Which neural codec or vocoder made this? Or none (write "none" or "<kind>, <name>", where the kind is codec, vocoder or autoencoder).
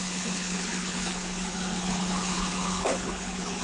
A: codec, HILCodec